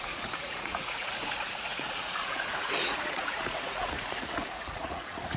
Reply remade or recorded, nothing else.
remade